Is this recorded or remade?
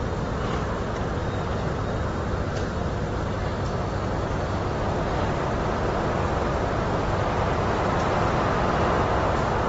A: recorded